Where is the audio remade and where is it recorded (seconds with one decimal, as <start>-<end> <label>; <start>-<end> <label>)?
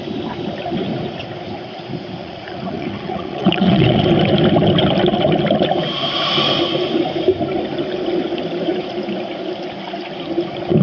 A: 0.0-2.2 recorded; 2.2-4.0 remade; 4.0-10.8 recorded